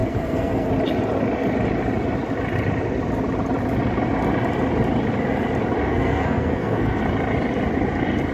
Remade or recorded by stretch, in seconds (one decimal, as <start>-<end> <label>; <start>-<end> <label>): 0.0-0.7 remade; 0.7-5.8 recorded; 5.8-7.0 remade; 7.0-8.3 recorded